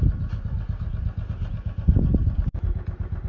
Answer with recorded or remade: recorded